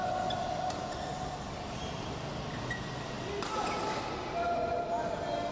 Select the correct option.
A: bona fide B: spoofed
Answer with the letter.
A